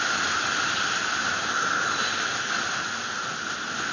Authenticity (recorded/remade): recorded